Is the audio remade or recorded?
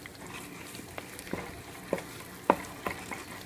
recorded